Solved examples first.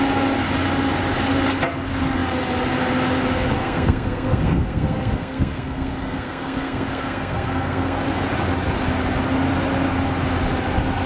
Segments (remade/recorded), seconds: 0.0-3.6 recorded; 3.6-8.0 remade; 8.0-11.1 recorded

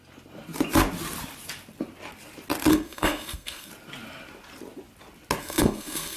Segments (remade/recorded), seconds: 0.0-2.7 recorded; 2.7-3.7 remade; 3.7-5.4 recorded; 5.4-6.2 remade